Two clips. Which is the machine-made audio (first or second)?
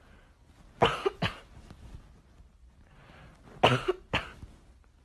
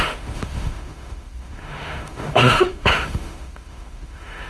second